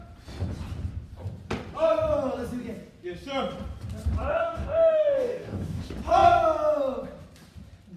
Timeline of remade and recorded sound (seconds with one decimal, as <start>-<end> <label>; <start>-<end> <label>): 0.0-4.3 recorded; 4.3-5.8 remade; 5.8-8.0 recorded